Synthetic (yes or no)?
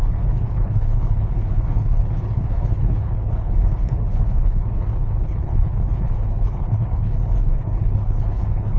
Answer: yes